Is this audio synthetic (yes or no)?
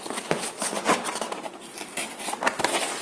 no